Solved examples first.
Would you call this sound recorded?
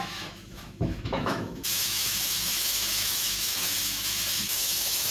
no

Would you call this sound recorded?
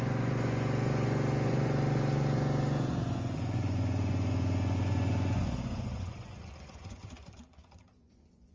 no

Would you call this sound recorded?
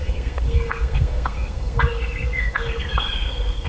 no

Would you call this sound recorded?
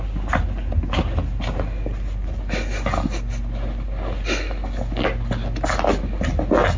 yes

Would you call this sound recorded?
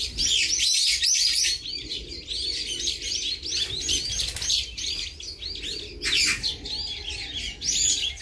yes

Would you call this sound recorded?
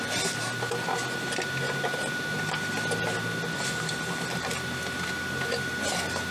yes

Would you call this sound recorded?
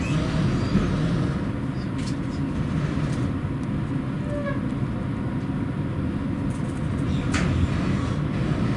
yes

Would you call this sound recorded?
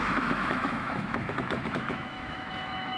no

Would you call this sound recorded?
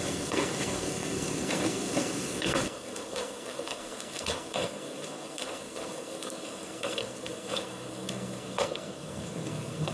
no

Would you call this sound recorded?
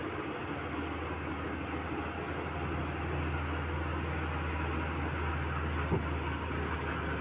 yes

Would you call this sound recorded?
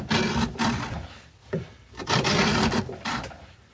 yes